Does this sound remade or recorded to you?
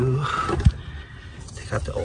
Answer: recorded